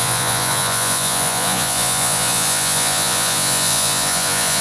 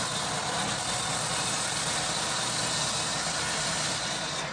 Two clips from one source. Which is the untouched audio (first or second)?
second